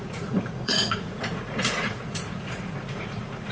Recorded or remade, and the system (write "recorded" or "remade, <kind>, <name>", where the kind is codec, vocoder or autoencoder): remade, vocoder, Vocos